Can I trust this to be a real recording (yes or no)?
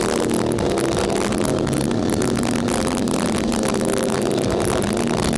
yes